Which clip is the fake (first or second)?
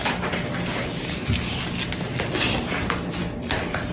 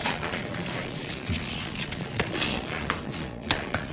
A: second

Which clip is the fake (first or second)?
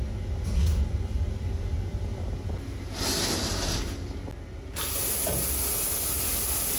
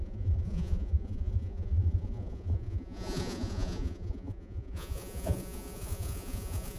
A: second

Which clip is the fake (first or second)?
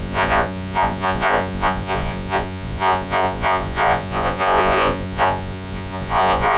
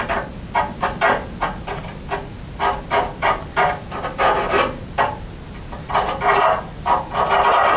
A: first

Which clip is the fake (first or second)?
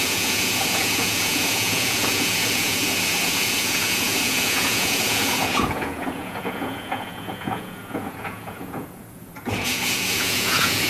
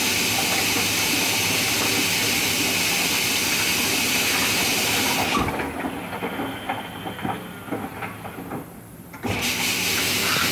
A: first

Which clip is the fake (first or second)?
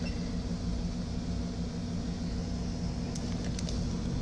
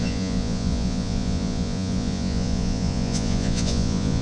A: second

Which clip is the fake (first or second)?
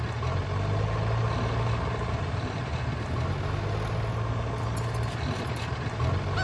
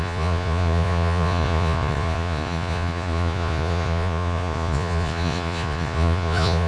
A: second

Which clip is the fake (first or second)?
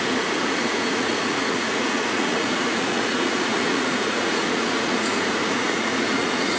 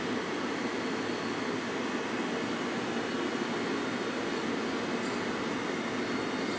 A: first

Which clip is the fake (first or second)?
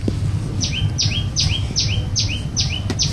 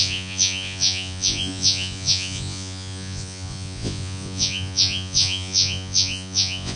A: second